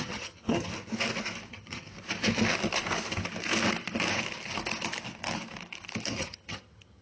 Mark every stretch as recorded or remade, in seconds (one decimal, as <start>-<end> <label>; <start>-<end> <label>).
0.0-0.7 remade; 0.7-1.5 recorded; 1.5-1.9 remade; 1.9-6.1 recorded; 6.1-7.0 remade